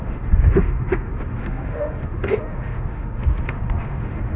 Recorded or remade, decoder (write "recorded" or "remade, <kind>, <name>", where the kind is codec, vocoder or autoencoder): remade, autoencoder, DAC-VAE